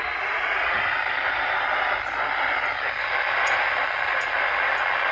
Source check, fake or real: real